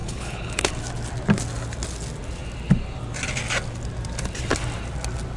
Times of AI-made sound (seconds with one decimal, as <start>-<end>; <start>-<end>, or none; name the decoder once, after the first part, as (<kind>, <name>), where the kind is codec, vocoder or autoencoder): 0.0-0.7 (codec, HILCodec)